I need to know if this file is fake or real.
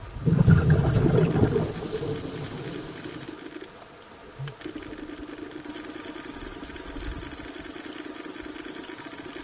real